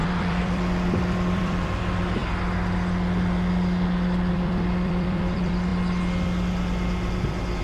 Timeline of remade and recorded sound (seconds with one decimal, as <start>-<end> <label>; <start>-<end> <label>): 0.0-2.2 remade; 2.2-4.3 recorded; 4.3-5.7 remade; 5.7-7.6 recorded

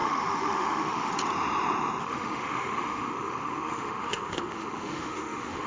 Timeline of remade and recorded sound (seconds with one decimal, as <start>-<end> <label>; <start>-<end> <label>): 0.0-1.1 remade; 1.1-2.0 recorded; 2.0-5.7 remade

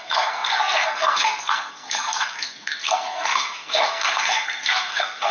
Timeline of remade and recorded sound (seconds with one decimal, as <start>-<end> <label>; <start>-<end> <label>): 0.0-5.3 remade